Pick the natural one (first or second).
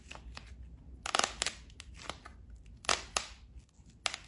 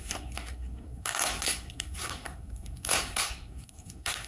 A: first